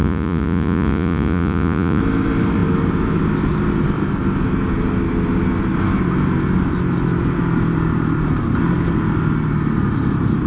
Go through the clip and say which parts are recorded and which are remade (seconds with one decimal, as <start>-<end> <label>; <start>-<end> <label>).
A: 0.0-2.0 remade; 2.0-10.5 recorded